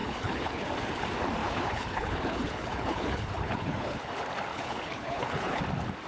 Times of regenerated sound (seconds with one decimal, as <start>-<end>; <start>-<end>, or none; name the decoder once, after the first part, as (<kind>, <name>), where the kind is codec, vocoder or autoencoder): 0.0-0.7 (codec, HILCodec); 1.4-4.1; 4.5-5.6